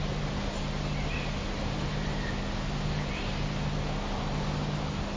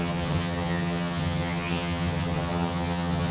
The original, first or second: first